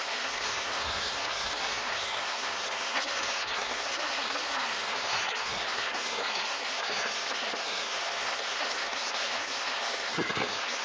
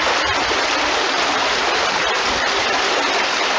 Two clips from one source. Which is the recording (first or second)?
second